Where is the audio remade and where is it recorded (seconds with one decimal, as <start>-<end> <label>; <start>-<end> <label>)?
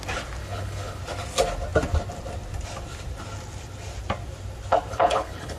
0.0-0.4 recorded; 0.4-1.0 remade; 1.0-4.9 recorded; 4.9-5.6 remade